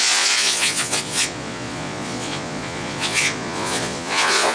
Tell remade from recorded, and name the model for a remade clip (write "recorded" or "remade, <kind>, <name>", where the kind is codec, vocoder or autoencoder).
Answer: remade, vocoder, Vocos